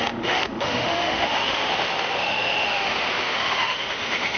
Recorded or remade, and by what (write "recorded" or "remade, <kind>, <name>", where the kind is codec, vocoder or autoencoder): remade, autoencoder, DAC-VAE